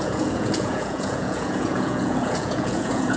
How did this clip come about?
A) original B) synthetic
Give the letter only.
B